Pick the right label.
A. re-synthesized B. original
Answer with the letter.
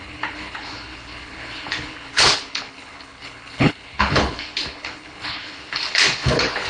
A